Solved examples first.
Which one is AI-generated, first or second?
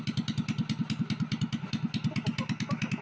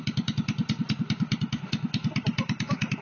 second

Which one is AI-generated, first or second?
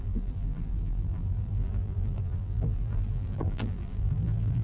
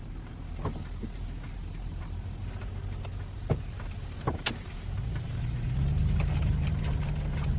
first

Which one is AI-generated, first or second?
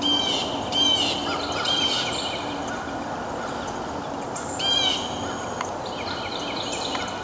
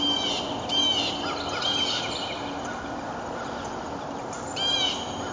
first